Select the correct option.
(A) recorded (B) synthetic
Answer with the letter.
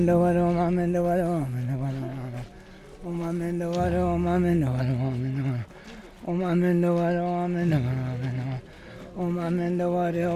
A